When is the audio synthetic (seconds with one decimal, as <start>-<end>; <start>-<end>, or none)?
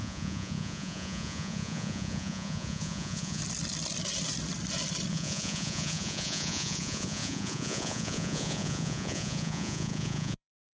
0.0-3.4; 5.1-10.7